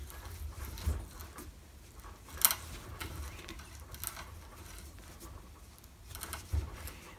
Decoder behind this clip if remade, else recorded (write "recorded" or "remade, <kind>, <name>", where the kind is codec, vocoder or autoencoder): recorded